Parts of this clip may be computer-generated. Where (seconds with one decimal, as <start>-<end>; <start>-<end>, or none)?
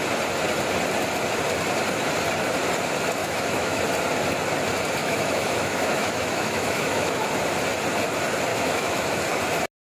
3.2-3.8; 5.0-7.3; 8.5-9.2